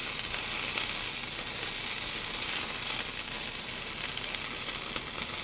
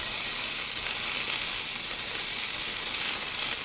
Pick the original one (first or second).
first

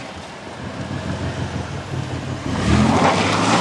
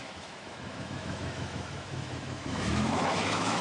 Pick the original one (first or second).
first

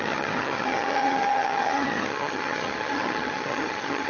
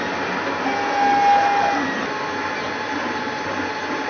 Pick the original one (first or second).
second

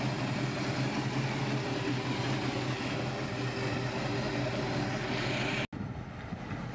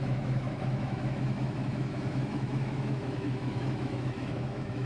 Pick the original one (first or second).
first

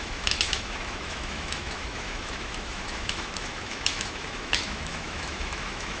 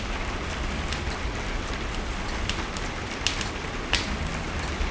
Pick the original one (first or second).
second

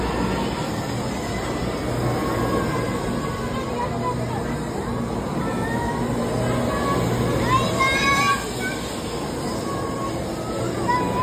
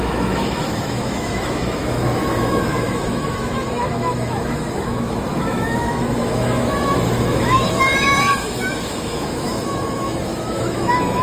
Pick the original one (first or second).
first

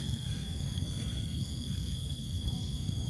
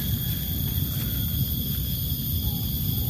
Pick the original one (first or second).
second